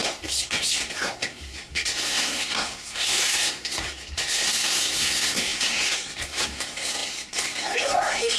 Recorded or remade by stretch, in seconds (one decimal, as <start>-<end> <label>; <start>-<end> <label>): 0.0-8.4 remade